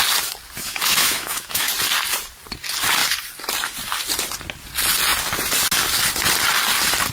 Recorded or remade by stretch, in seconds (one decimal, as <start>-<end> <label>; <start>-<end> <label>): 0.0-0.6 recorded; 0.6-1.7 remade; 1.7-7.1 recorded